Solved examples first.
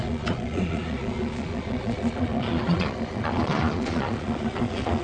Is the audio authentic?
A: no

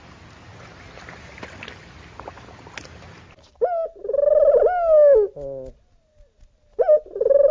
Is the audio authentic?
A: yes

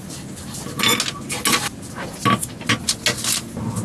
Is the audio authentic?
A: yes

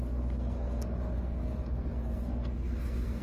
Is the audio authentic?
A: no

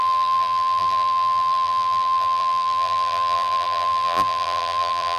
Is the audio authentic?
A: no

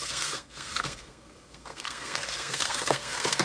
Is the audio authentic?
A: no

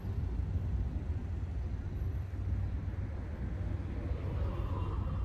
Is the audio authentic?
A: yes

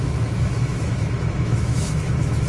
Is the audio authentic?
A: no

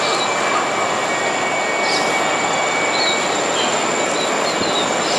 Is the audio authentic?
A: yes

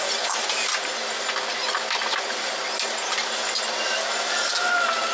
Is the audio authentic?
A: yes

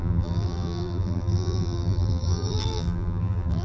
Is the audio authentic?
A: no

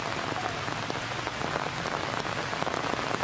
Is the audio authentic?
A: yes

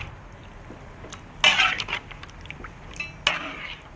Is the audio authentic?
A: yes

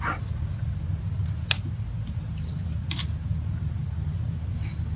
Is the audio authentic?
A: yes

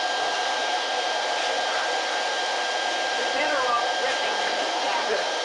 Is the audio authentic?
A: no